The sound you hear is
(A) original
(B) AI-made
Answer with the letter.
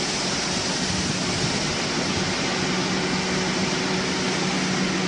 A